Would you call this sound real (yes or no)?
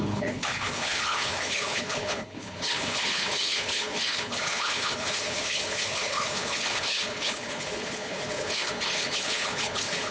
no